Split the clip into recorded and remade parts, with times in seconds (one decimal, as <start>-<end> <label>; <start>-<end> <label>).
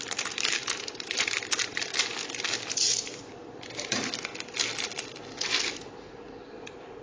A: 0.0-1.9 remade; 1.9-2.8 recorded; 2.8-4.3 remade; 4.3-5.4 recorded; 5.4-7.0 remade